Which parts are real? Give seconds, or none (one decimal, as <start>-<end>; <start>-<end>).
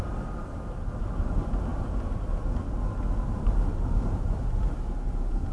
0.0-5.5